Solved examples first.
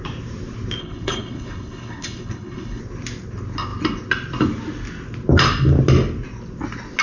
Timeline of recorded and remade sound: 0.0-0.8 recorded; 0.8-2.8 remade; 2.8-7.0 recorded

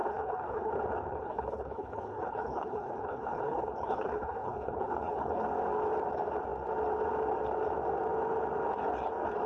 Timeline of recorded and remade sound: 0.0-0.7 remade; 0.7-1.1 recorded; 1.1-5.4 remade; 5.4-9.5 recorded

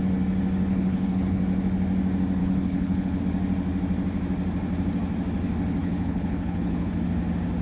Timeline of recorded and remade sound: 0.0-0.7 recorded; 0.7-1.4 remade; 1.4-2.4 recorded; 2.4-3.2 remade; 3.2-5.8 recorded; 5.8-6.9 remade; 6.9-7.6 recorded

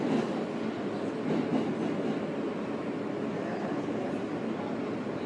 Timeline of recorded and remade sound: 0.0-3.5 recorded; 3.5-4.1 remade; 4.1-5.3 recorded

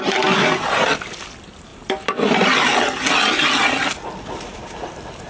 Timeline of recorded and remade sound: 0.0-5.3 recorded

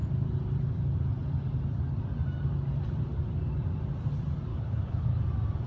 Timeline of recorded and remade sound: 0.0-4.5 recorded; 4.5-5.2 remade; 5.2-5.7 recorded